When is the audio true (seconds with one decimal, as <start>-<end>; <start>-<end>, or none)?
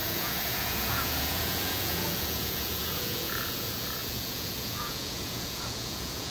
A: none